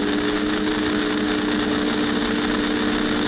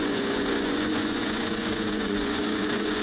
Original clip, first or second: first